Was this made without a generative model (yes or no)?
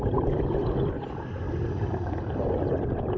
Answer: yes